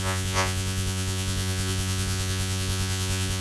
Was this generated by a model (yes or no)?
yes